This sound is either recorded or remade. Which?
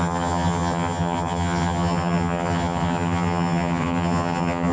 remade